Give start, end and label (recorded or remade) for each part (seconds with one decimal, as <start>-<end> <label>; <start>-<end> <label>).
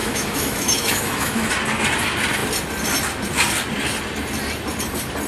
0.0-1.5 remade; 1.5-5.3 recorded